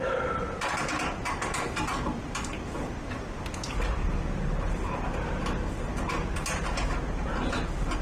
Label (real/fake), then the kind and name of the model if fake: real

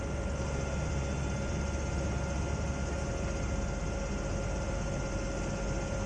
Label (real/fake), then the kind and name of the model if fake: real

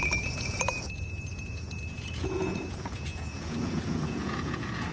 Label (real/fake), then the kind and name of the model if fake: fake, vocoder, Vocos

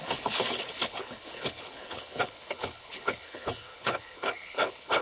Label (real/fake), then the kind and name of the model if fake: fake, codec, HILCodec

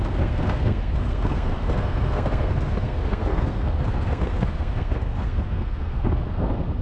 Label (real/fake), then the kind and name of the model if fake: fake, codec, SNAC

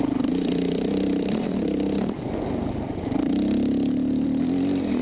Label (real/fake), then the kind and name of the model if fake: fake, vocoder, BigVGAN v2